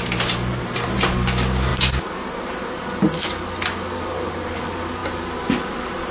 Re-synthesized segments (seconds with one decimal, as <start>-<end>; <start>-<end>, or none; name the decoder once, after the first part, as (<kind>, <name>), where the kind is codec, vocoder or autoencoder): none

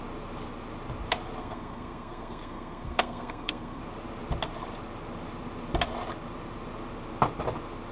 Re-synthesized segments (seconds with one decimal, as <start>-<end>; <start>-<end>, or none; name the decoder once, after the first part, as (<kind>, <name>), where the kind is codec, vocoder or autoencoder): 1.4-3.8 (codec, SNAC)

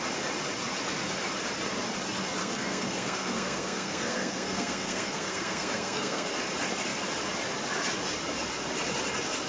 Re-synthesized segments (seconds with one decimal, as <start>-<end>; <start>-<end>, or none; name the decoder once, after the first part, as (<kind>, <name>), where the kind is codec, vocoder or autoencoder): 2.4-6.3 (codec, SNAC)

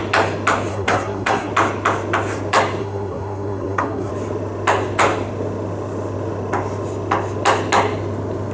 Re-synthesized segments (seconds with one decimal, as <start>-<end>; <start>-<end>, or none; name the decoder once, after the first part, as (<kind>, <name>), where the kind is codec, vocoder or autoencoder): 0.7-1.5 (codec, SNAC); 2.8-4.1

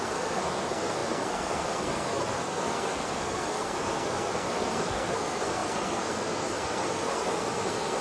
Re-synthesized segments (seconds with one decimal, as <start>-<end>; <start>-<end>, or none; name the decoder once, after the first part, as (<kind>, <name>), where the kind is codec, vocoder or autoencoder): 0.0-8.0 (codec, SNAC)

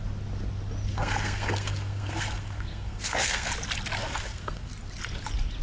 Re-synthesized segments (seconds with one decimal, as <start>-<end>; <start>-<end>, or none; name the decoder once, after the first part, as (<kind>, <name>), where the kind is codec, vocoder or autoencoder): 0.9-3.5 (codec, SNAC); 4.0-4.7

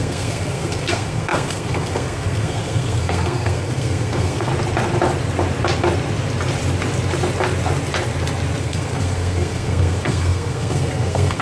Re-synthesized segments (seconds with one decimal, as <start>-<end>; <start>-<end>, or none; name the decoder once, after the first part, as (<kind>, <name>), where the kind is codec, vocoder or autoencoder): 0.0-4.5 (codec, SNAC); 8.6-11.4